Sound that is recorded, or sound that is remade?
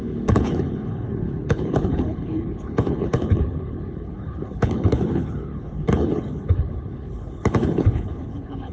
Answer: remade